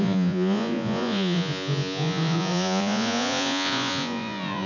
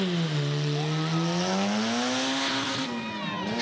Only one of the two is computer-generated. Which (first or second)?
first